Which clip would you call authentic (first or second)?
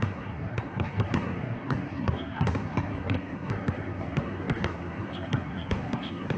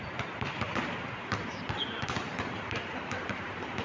second